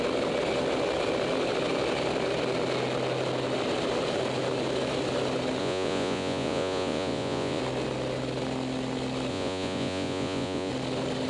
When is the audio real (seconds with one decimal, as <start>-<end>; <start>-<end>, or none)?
0.0-5.6; 7.6-9.3; 10.7-11.3